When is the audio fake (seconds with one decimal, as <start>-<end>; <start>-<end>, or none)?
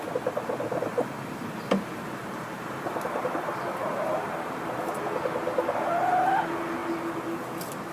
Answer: 0.9-4.9